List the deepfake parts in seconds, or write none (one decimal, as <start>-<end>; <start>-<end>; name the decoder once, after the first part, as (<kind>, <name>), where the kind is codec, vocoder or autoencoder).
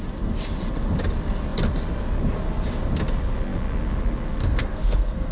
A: 4.4-5.3 (codec, SNAC)